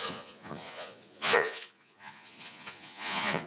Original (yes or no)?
no